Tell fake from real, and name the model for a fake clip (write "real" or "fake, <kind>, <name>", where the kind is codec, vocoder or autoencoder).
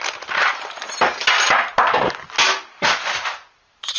real